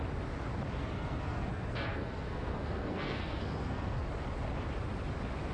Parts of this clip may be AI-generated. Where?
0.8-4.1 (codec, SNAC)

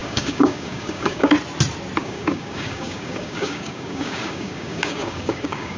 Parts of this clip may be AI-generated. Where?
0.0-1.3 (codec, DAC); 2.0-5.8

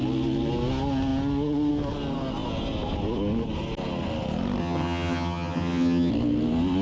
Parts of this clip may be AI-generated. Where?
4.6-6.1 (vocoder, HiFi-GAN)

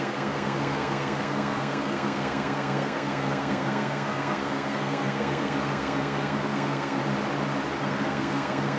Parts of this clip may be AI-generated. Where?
0.0-7.0 (codec, SNAC); 7.8-8.8